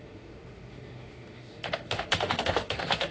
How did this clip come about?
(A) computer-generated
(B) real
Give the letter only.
A